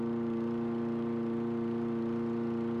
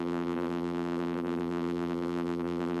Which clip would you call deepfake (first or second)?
second